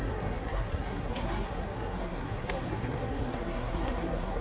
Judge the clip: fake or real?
fake